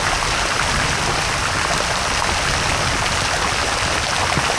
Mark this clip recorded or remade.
recorded